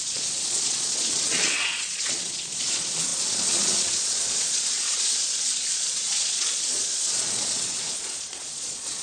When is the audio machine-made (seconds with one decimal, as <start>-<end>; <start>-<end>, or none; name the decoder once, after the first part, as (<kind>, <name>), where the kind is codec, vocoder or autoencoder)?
0.0-9.0 (vocoder, Vocos)